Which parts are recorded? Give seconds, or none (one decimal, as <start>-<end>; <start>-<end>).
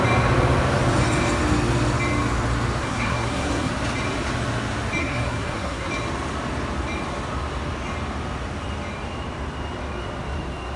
0.0-2.8; 3.7-5.0; 5.9-10.8